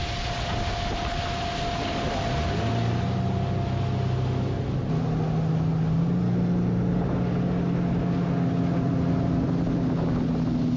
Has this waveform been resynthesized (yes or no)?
no